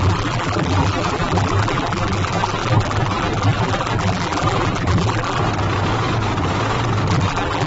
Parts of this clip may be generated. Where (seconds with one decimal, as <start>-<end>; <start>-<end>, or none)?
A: 0.0-5.4; 7.1-7.7